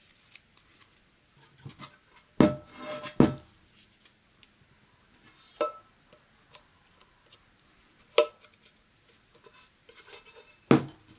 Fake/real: real